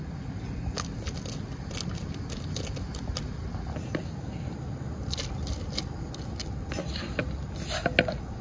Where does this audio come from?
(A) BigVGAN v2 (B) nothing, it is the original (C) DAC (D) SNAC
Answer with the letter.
B